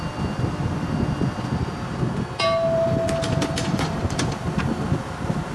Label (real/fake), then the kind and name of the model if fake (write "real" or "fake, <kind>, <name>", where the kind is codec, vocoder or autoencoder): real